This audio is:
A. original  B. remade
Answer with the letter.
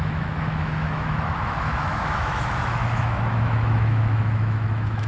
B